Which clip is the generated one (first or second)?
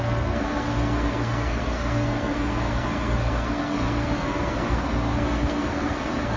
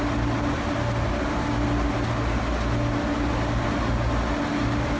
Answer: first